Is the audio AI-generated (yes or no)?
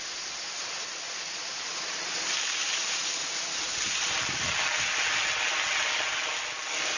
no